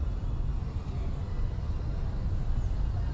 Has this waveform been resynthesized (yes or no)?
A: no